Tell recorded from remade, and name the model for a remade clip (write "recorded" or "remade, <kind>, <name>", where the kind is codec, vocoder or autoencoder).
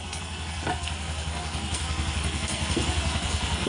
remade, codec, SNAC